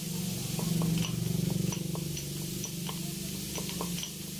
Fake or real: real